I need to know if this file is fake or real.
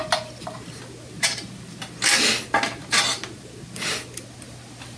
real